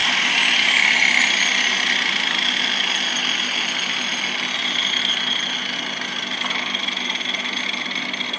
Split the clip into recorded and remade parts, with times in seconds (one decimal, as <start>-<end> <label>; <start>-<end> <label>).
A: 0.0-8.4 recorded